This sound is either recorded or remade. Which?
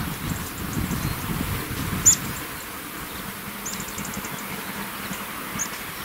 recorded